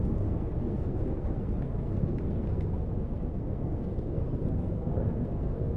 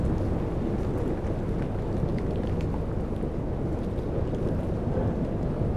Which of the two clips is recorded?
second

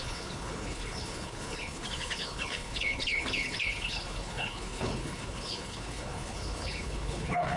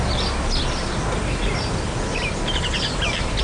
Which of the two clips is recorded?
second